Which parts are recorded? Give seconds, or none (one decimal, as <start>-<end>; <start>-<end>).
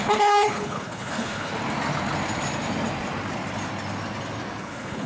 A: 1.5-4.6